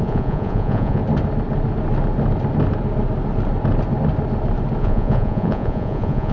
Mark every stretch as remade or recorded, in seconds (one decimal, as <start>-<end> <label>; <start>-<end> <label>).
0.0-1.0 remade; 1.0-4.8 recorded; 4.8-6.3 remade

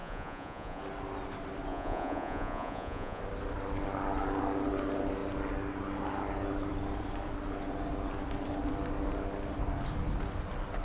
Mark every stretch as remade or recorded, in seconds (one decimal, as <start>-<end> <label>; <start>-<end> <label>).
0.0-0.8 remade; 0.8-1.7 recorded; 1.7-3.2 remade; 3.2-10.8 recorded

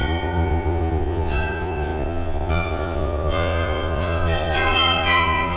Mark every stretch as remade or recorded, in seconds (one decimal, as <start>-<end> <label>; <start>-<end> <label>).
0.0-5.6 remade

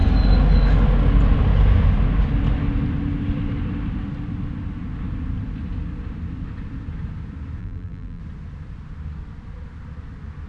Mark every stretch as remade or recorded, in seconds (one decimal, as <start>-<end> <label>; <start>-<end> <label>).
0.0-7.6 recorded; 7.6-8.2 remade; 8.2-10.5 recorded